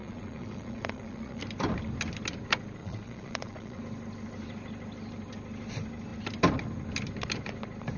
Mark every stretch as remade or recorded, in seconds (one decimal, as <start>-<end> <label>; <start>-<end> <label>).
0.0-1.4 remade; 1.4-2.8 recorded; 2.8-3.8 remade; 3.8-8.0 recorded